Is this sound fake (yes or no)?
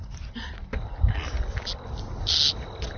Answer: no